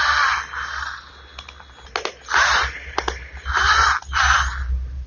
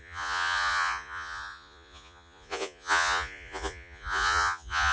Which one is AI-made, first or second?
second